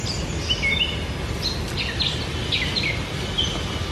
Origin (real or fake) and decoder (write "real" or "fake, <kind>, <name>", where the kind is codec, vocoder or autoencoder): real